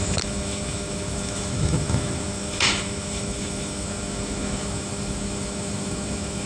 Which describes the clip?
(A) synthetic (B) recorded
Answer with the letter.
A